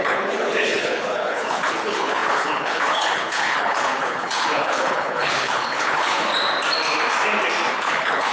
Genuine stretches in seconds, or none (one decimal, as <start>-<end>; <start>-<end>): 6.3-7.7